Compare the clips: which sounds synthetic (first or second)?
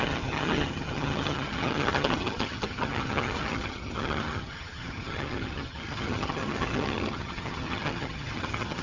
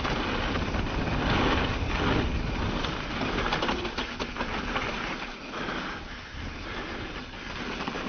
first